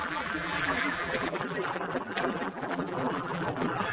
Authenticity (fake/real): fake